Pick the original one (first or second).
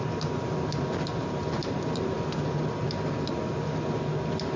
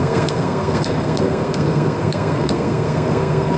first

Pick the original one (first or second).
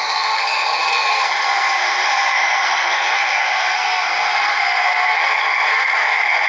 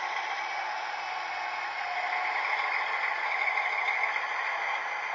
second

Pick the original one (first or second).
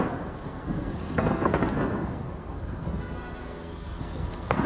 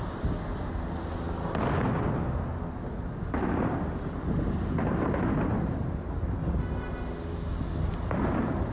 second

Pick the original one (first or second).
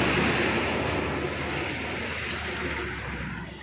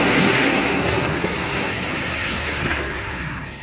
first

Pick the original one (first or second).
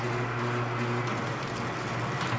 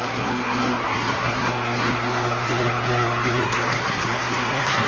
first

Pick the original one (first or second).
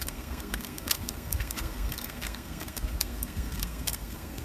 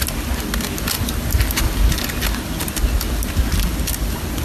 second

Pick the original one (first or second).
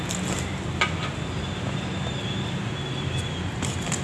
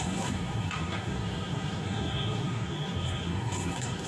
first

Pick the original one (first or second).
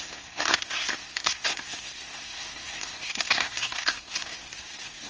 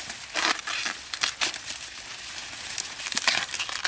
second